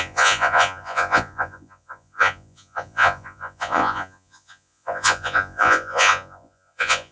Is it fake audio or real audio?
fake